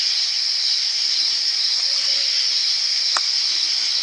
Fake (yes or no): no